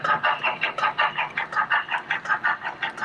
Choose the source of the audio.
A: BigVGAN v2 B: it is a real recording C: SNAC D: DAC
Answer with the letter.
B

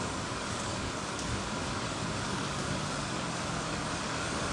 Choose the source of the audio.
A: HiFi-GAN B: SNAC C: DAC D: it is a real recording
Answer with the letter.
C